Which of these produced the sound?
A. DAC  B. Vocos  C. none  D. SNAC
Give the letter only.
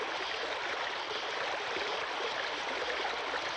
C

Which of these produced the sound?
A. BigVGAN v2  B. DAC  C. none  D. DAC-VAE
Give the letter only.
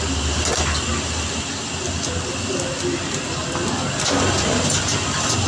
C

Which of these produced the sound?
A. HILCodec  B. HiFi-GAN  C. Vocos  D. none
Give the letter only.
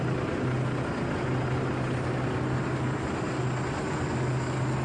D